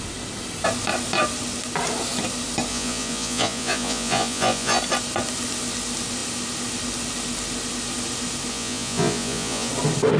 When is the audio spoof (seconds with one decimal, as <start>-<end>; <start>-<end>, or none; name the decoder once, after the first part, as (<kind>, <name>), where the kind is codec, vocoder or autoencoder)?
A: 2.7-4.8 (vocoder, Vocos); 8.5-9.7

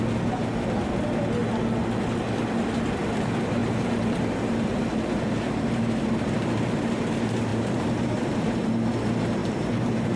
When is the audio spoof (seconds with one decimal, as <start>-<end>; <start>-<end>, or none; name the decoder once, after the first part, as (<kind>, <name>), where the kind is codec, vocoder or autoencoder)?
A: 3.6-6.3 (vocoder, BigVGAN v2); 7.5-8.7; 9.4-10.2